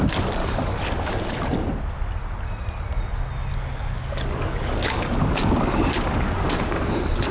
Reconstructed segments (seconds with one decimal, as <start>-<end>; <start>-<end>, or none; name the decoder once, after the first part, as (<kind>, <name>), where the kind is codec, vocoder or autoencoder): 0.4-1.3 (codec, DAC); 3.5-6.8

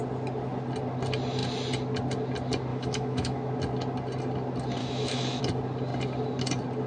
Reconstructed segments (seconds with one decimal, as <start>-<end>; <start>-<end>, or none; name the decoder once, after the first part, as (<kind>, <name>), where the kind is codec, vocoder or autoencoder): 2.7-3.4 (autoencoder, DAC-VAE); 4.8-5.4

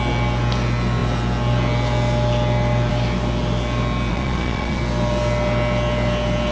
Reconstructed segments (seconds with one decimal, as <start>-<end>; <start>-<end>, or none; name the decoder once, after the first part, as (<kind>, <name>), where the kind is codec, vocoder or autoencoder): 4.1-4.8 (vocoder, Vocos)

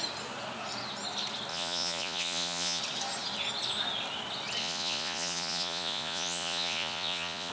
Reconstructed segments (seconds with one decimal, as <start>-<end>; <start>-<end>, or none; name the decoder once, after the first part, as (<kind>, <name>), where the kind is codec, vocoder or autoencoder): 1.5-2.8 (vocoder, Vocos); 4.6-7.5

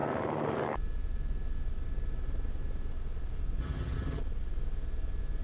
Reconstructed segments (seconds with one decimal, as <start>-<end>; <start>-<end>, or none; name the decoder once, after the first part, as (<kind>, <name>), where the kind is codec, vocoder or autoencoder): 3.6-4.2 (vocoder, HiFi-GAN)

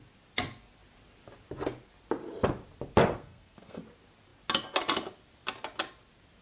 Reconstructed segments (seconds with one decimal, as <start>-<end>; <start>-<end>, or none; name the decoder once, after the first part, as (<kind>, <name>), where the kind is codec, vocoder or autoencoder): 3.1-3.8 (codec, SNAC)

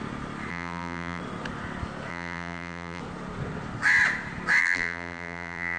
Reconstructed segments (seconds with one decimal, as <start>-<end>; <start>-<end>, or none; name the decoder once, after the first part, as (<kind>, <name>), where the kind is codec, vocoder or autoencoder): 0.5-1.2 (vocoder, BigVGAN v2); 2.1-3.0; 4.6-5.8